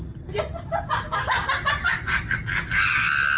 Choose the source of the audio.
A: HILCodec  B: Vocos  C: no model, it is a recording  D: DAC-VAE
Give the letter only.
C